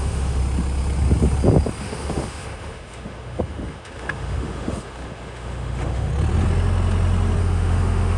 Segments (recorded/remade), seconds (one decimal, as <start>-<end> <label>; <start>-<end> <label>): 0.0-0.4 remade; 0.4-1.8 recorded; 1.8-6.1 remade; 6.1-7.4 recorded; 7.4-8.2 remade